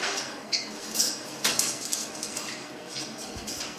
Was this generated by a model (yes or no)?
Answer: yes